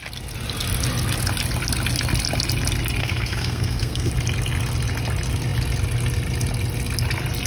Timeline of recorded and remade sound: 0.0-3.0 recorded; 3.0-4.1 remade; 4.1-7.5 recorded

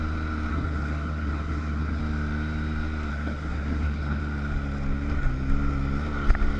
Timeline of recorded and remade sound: 0.0-0.5 recorded; 0.5-2.0 remade; 2.0-3.1 recorded; 3.1-4.2 remade; 4.2-6.6 recorded